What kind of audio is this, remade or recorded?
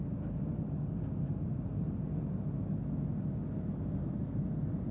recorded